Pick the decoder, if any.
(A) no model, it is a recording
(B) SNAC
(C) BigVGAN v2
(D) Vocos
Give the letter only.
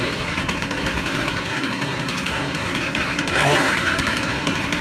B